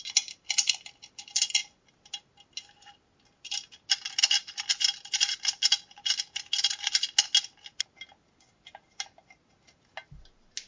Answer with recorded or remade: recorded